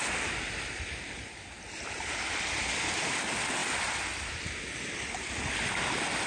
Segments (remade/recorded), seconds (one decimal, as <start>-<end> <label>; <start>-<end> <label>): 0.0-6.3 recorded

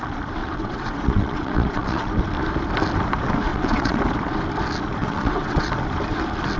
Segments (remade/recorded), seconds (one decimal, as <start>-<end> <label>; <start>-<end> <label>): 0.0-0.4 recorded; 0.4-2.1 remade; 2.1-3.5 recorded; 3.5-4.0 remade; 4.0-5.0 recorded; 5.0-5.7 remade; 5.7-6.6 recorded

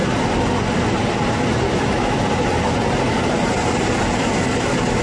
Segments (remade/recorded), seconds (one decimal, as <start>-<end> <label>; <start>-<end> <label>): 0.0-5.0 recorded

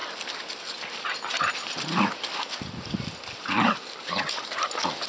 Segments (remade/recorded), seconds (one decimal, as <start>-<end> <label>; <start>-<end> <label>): 0.0-5.1 recorded

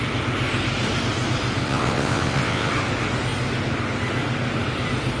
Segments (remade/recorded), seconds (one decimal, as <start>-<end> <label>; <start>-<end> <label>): 0.0-1.6 recorded; 1.6-2.7 remade; 2.7-5.2 recorded

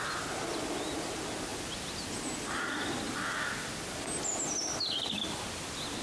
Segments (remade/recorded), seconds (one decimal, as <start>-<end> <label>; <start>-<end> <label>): 0.0-6.0 recorded

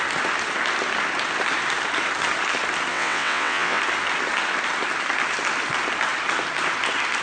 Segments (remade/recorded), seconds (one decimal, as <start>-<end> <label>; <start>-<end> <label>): 0.0-2.9 recorded; 2.9-3.8 remade; 3.8-7.2 recorded

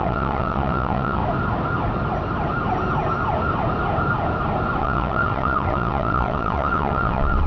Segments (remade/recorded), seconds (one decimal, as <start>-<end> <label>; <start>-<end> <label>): 0.0-1.2 remade; 1.2-4.8 recorded; 4.8-7.5 remade